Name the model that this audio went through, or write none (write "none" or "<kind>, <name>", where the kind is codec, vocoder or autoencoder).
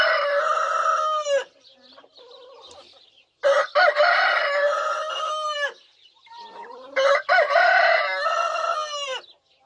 none